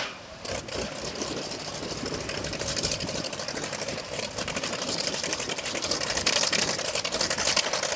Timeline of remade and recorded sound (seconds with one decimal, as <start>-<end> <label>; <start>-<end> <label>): 0.0-2.4 recorded; 2.4-7.2 remade; 7.2-8.0 recorded